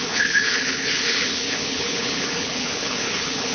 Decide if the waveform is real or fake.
fake